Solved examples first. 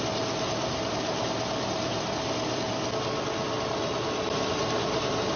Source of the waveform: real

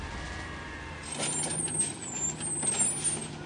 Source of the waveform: real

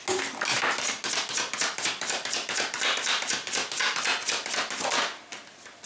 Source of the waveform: real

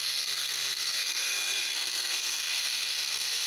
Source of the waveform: fake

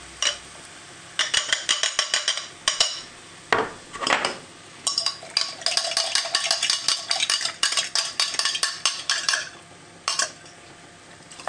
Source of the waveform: real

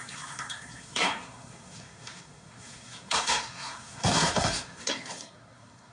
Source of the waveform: fake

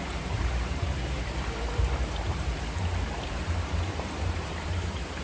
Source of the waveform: fake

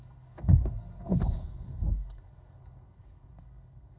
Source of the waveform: fake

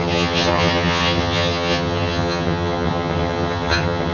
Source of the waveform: fake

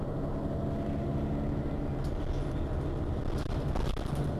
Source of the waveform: real